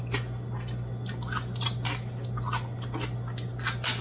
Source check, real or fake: real